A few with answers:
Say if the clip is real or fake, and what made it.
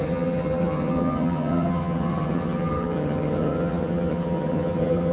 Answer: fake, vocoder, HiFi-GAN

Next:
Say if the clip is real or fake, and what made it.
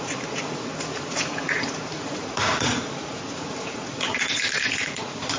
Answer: fake, vocoder, Vocos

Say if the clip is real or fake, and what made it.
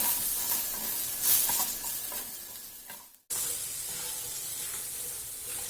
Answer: real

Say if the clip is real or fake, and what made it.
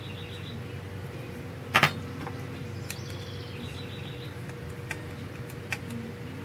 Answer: real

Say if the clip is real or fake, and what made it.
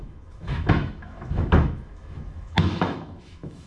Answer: fake, autoencoder, DAC-VAE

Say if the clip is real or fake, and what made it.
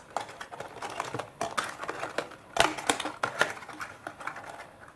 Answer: real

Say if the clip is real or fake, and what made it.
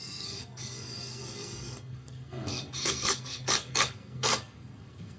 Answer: fake, codec, SNAC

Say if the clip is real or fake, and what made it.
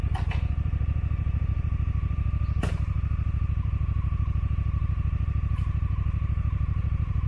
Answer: fake, vocoder, BigVGAN v2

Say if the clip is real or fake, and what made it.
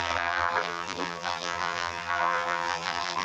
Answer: fake, vocoder, BigVGAN v2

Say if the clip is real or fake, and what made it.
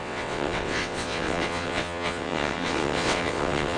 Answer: fake, vocoder, WaveNeXt